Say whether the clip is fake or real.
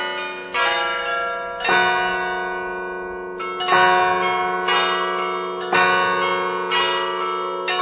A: real